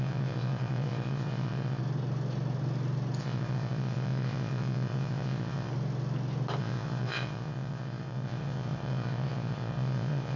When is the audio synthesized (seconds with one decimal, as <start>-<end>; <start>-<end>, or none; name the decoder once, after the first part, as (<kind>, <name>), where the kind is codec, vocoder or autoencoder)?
0.0-1.8 (vocoder, Vocos); 3.2-5.7; 6.6-10.4